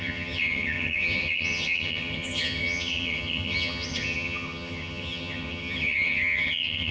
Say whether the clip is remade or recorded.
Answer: remade